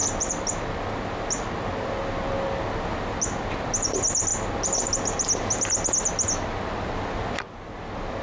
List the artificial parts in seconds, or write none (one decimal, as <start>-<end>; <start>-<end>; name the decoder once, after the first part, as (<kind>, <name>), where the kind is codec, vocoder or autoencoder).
none